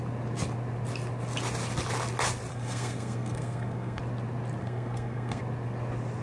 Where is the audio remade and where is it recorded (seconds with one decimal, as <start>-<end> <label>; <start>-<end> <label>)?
0.0-2.5 recorded; 2.5-4.0 remade; 4.0-4.6 recorded; 4.6-5.4 remade; 5.4-6.2 recorded